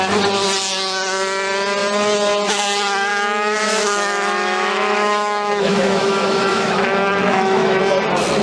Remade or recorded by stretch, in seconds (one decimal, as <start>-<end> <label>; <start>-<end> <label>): 0.0-3.1 recorded; 3.1-7.8 remade; 7.8-8.4 recorded